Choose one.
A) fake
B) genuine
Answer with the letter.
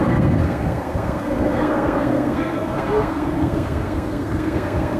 A